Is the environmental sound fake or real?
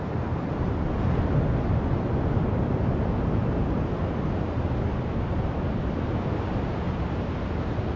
real